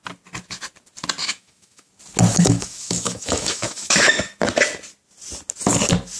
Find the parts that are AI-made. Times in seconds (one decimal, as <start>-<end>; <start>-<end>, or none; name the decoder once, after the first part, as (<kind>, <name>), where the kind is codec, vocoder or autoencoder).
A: 1.2-1.9 (autoencoder, DAC-VAE); 2.3-4.3